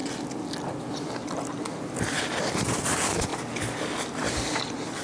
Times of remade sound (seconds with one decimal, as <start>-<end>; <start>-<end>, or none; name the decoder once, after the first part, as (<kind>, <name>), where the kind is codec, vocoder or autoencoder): none